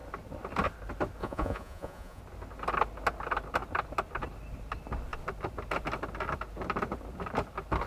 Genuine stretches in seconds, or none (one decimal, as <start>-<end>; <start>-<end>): 0.0-1.2; 2.2-7.9